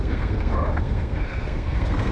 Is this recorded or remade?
remade